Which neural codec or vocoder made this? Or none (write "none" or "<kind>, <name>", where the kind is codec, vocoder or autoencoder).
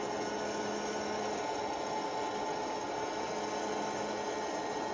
none